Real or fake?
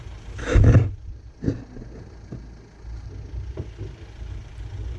real